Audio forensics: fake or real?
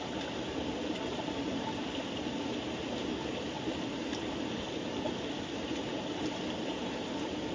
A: real